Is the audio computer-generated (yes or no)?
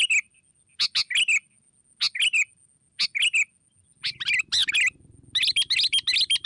no